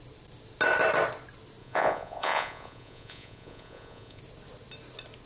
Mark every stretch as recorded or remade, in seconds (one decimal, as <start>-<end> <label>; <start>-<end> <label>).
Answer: 0.0-1.6 recorded; 1.6-4.2 remade; 4.2-5.3 recorded